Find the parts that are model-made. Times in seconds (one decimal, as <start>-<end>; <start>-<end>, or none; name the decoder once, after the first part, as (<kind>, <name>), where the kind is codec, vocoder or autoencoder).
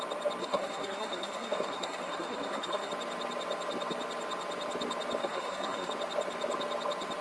0.4-2.9 (codec, SNAC); 5.2-5.9